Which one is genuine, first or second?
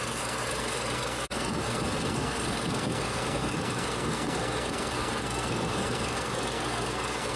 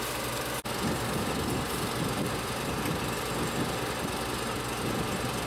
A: second